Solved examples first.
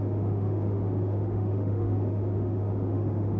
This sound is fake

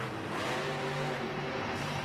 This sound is fake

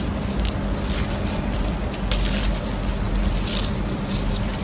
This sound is real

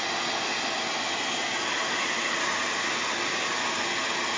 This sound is real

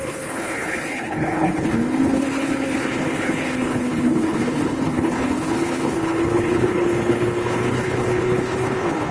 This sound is fake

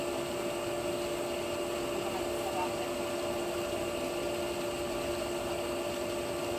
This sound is real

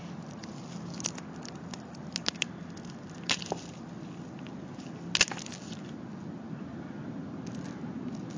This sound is real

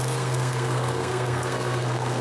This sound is fake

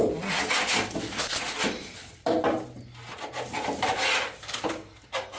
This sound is real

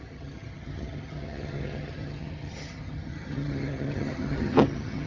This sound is fake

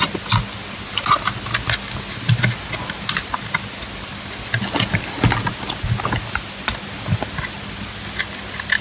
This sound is real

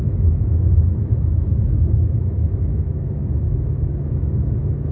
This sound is fake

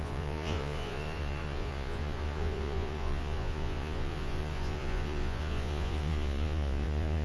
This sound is fake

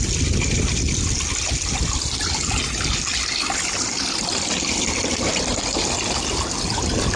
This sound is real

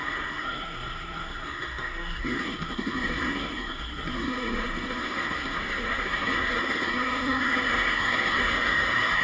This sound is fake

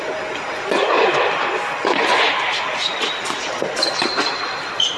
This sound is real